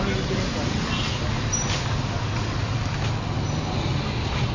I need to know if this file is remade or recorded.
recorded